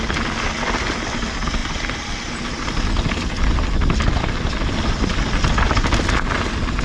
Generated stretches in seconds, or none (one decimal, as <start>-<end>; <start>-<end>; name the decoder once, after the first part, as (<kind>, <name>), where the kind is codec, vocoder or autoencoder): none